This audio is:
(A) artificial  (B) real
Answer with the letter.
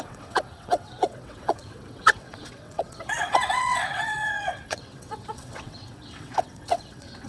A